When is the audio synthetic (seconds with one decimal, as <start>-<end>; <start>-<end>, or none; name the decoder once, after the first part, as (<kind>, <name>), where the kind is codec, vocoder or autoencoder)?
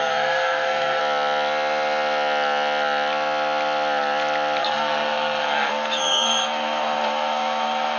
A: 0.0-1.0 (codec, SNAC); 4.6-8.0